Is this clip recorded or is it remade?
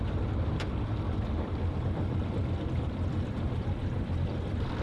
remade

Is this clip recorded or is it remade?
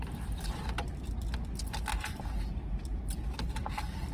recorded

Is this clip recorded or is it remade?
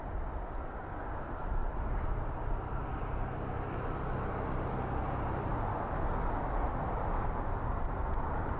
recorded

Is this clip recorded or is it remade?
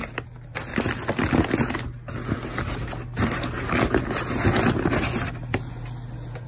recorded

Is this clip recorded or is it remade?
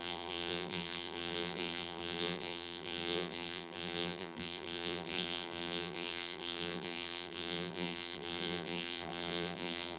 remade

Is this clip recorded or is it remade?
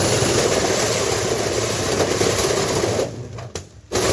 recorded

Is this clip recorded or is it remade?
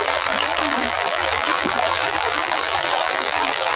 remade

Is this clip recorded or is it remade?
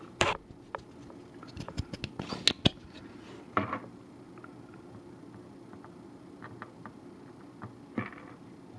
recorded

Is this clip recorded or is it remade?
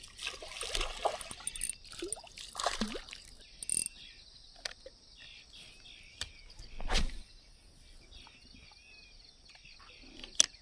recorded